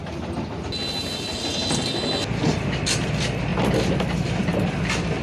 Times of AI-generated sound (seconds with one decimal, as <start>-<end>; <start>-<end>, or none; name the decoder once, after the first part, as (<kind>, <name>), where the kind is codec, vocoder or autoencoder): 2.5-3.5 (vocoder, BigVGAN v2); 4.0-5.2

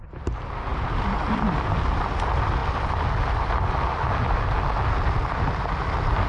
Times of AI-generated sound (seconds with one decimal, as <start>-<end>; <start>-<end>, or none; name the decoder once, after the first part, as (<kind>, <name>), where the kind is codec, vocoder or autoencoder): 0.7-1.4 (vocoder, BigVGAN v2)

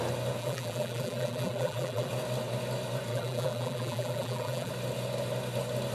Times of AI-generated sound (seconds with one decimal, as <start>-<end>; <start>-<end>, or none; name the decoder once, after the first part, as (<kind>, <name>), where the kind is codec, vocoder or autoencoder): 0.4-2.1 (vocoder, BigVGAN v2); 3.1-4.7

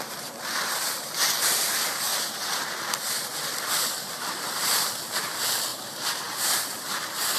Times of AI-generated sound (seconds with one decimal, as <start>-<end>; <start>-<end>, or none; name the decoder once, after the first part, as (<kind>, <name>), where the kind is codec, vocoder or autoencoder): 0.0-2.1 (vocoder, BigVGAN v2); 3.7-7.4